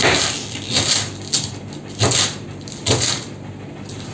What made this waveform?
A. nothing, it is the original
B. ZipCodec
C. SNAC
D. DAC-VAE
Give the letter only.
A